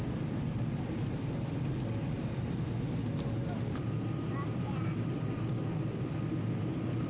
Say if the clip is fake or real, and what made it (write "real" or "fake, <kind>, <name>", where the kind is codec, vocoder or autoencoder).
real